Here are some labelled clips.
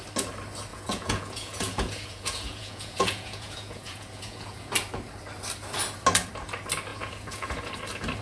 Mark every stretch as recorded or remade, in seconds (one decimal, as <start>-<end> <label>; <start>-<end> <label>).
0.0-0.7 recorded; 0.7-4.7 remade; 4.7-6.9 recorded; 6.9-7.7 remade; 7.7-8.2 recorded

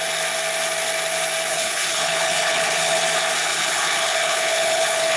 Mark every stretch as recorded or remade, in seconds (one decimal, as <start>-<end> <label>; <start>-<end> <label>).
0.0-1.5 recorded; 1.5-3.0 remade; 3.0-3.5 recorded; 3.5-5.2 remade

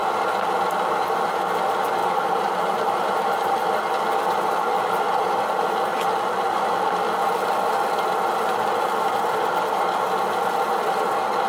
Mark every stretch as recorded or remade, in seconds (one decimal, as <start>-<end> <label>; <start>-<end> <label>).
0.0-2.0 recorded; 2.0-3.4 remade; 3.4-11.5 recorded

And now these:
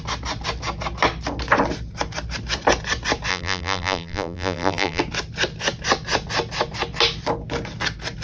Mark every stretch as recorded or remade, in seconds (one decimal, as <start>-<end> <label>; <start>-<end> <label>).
0.0-3.3 recorded; 3.3-5.0 remade; 5.0-8.2 recorded